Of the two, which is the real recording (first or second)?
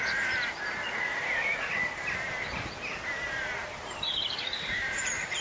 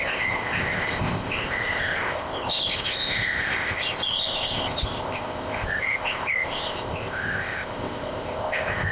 first